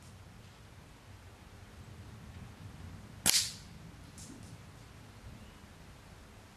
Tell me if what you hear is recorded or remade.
recorded